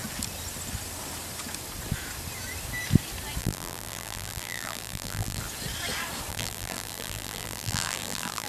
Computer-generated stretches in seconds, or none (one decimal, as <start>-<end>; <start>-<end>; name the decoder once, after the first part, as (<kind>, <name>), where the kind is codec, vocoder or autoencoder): 3.4-5.4 (vocoder, BigVGAN v2); 6.3-8.5